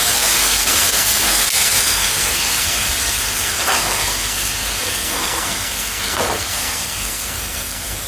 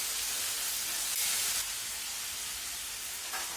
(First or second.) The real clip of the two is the second